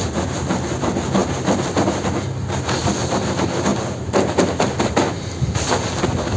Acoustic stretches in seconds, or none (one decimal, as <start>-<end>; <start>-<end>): 0.0-1.2; 2.8-3.7; 4.8-6.4